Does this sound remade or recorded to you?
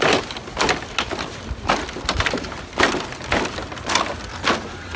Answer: recorded